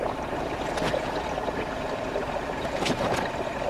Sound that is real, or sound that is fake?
real